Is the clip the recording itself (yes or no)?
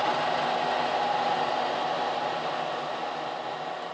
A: yes